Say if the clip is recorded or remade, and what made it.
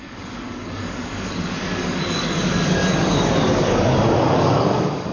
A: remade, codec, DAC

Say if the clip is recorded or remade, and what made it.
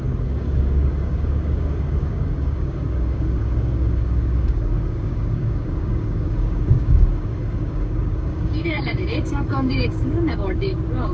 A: remade, codec, DAC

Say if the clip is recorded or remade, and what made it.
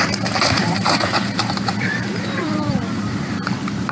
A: remade, vocoder, BigVGAN v2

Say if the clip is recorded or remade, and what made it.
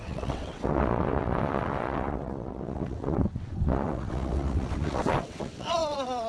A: remade, vocoder, WaveNeXt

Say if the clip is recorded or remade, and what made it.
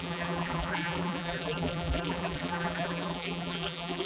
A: remade, vocoder, BigVGAN v2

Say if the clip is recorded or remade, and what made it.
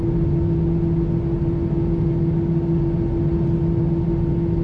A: recorded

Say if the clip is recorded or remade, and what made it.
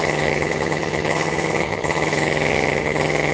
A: remade, vocoder, HiFi-GAN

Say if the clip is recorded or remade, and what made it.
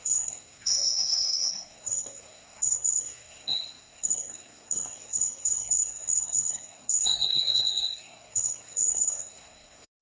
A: remade, codec, SNAC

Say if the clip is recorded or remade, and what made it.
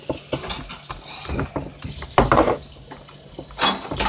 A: recorded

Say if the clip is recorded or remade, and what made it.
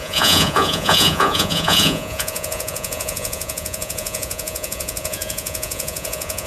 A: remade, vocoder, Vocos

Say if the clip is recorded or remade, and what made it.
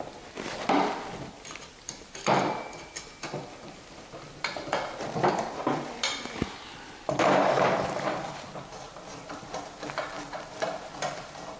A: remade, vocoder, BigVGAN v2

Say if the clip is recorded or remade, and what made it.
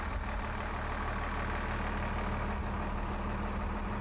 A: recorded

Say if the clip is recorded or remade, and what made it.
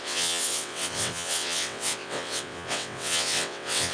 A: remade, vocoder, WaveNeXt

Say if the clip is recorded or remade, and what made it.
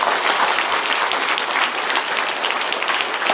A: recorded